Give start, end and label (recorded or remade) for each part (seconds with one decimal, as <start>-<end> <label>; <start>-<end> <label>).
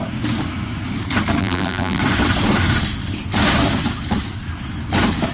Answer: 0.0-1.4 recorded; 1.4-2.0 remade; 2.0-5.3 recorded